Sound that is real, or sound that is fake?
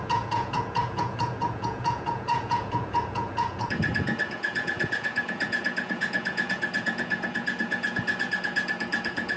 fake